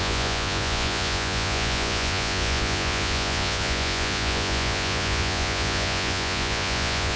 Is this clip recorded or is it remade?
remade